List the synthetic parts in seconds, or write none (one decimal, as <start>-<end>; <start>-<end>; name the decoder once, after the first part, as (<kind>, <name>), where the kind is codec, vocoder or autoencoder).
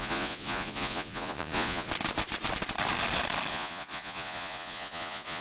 0.0-1.9 (vocoder, Vocos); 3.5-5.4